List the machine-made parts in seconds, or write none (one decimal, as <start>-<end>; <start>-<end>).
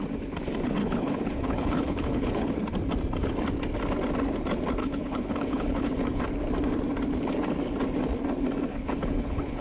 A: 0.8-2.5; 4.8-6.2; 8.7-9.6